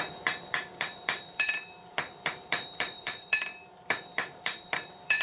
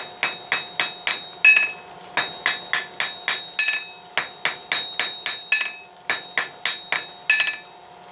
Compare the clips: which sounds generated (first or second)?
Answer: first